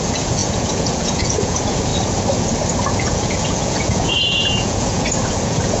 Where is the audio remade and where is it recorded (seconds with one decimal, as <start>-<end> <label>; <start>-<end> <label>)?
0.0-1.9 remade; 1.9-2.9 recorded; 2.9-5.8 remade